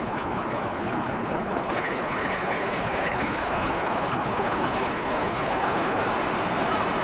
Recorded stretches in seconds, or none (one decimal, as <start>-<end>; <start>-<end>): 6.0-7.0